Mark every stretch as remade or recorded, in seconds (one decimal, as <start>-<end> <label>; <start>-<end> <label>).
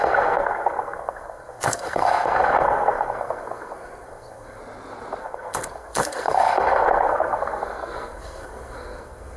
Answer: 0.0-4.6 remade; 4.6-5.2 recorded; 5.2-9.4 remade